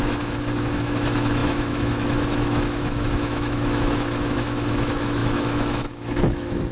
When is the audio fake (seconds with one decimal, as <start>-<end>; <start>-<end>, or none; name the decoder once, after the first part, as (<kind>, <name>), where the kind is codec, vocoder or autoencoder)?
0.0-6.7 (autoencoder, DAC-VAE)